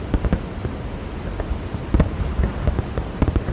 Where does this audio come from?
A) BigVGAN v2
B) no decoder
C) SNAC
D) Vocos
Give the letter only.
B